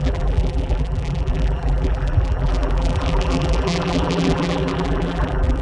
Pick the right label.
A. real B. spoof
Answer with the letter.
B